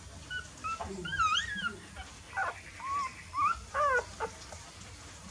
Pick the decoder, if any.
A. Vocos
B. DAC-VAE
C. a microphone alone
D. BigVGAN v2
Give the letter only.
C